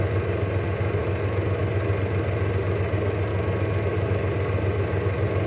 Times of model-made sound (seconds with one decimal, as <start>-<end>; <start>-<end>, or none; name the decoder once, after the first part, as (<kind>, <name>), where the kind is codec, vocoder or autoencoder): 1.0-1.6 (autoencoder, DAC-VAE); 3.3-3.9